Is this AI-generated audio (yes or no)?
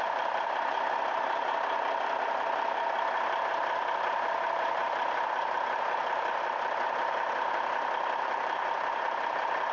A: no